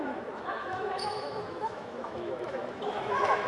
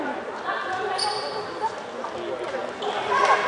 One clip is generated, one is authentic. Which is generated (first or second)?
first